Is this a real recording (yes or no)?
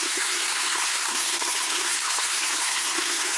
no